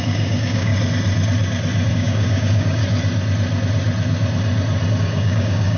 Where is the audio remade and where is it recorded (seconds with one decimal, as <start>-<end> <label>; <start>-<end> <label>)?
0.0-0.7 remade; 0.7-1.9 recorded; 1.9-2.8 remade; 2.8-5.0 recorded; 5.0-5.8 remade